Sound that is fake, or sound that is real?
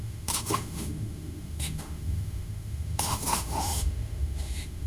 fake